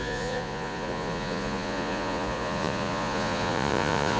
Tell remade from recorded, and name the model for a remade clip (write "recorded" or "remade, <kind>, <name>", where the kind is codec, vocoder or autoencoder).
remade, vocoder, Vocos